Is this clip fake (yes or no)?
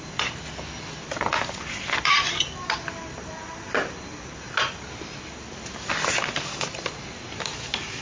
no